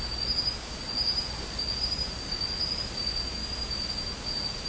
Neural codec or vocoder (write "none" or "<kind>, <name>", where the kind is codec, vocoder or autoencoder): none